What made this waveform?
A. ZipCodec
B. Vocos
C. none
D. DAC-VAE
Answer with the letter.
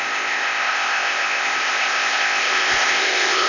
A